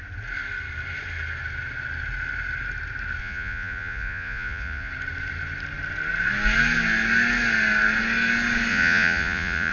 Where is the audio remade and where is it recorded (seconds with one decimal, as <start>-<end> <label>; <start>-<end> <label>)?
0.0-3.2 recorded; 3.2-4.9 remade; 4.9-8.7 recorded; 8.7-9.7 remade